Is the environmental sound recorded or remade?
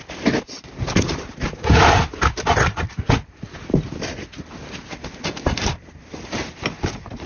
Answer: recorded